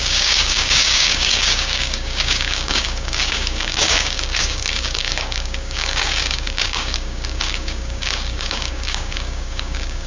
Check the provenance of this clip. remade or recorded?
remade